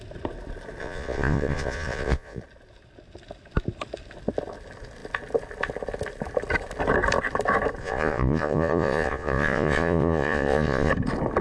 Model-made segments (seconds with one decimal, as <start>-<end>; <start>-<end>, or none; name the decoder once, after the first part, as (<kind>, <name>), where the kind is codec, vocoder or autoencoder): 0.8-2.4 (vocoder, Vocos); 7.8-10.9